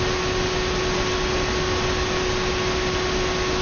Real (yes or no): yes